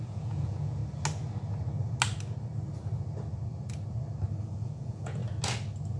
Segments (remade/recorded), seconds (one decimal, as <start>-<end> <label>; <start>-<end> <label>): 0.0-0.8 remade; 0.8-4.4 recorded; 4.4-5.2 remade; 5.2-6.0 recorded